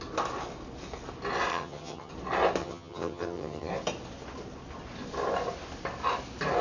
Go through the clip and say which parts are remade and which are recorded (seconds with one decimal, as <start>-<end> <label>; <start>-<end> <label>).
0.0-1.5 recorded; 1.5-2.1 remade; 2.1-2.6 recorded; 2.6-3.7 remade; 3.7-6.6 recorded

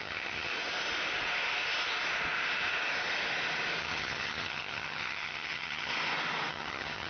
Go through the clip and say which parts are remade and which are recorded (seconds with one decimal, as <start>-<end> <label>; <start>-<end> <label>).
0.0-0.5 remade; 0.5-3.8 recorded; 3.8-5.9 remade; 5.9-6.5 recorded; 6.5-7.1 remade